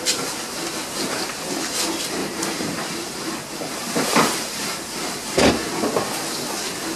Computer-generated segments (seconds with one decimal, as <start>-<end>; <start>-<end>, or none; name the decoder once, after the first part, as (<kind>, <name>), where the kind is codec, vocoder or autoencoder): 2.2-5.5 (vocoder, BigVGAN v2)